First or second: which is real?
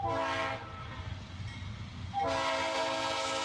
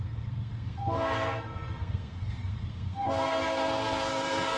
first